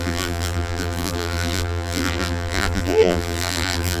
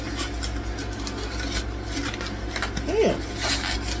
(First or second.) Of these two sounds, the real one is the second